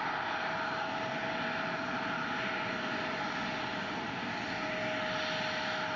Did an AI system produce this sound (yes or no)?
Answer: no